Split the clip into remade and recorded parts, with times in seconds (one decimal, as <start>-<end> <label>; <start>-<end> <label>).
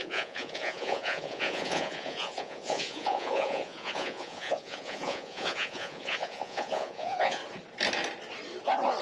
0.0-7.4 remade; 7.4-9.0 recorded